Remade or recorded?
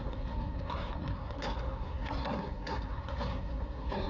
remade